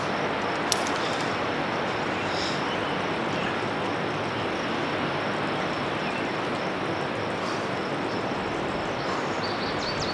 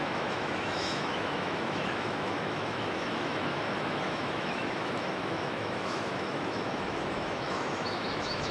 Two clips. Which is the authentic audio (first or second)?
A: first